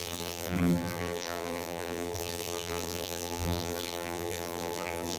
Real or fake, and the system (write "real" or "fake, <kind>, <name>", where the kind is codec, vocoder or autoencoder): fake, vocoder, BigVGAN v2